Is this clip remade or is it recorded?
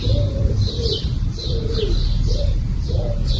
remade